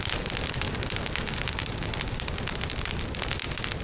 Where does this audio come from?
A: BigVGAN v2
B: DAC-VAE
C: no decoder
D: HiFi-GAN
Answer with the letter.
C